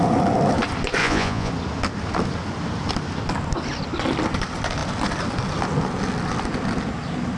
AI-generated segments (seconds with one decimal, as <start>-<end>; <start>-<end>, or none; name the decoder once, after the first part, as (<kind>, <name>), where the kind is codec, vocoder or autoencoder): 1.0-1.5 (vocoder, Vocos)

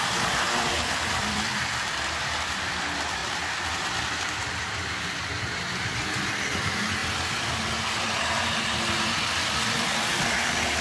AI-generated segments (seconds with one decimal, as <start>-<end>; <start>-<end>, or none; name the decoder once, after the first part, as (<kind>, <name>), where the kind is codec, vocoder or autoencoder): 0.0-1.5 (vocoder, BigVGAN v2); 2.5-3.2; 4.3-7.0; 9.0-10.8

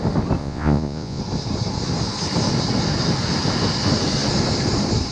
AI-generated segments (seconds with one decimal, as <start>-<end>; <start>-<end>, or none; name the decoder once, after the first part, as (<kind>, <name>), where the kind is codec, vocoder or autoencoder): 0.4-1.2 (vocoder, Vocos)